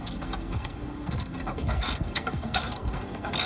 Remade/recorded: remade